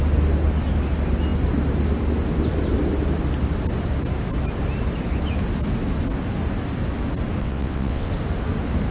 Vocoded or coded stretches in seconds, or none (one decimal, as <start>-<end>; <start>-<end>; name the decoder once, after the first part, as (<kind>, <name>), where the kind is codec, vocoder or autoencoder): 7.4-8.1 (vocoder, WaveNeXt)